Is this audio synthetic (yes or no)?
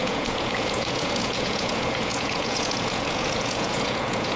yes